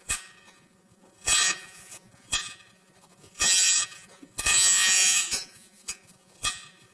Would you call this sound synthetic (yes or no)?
yes